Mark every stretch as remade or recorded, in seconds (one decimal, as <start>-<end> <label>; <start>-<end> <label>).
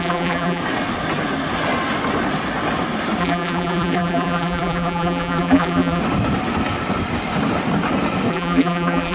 0.0-0.6 remade; 0.6-3.2 recorded; 3.2-6.0 remade; 6.0-8.3 recorded; 8.3-9.1 remade